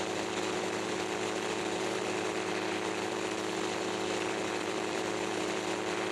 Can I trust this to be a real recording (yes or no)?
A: no